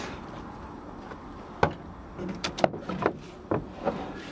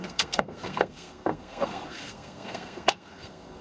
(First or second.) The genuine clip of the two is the first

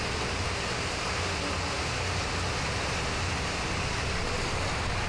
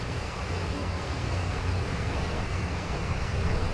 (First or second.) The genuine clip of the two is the first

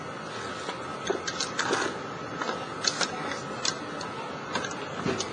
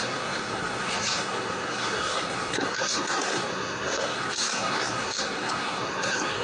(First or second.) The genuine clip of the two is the first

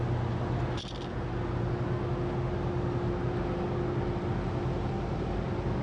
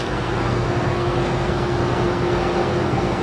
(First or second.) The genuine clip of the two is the first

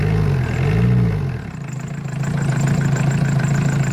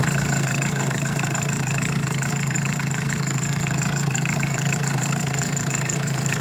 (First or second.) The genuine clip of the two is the first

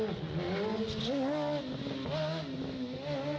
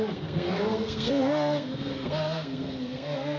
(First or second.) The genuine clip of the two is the first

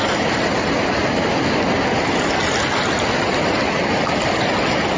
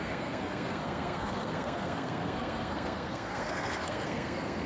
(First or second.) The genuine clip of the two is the first